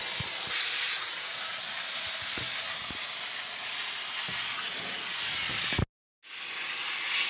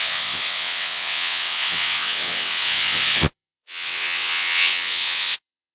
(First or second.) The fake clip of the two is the second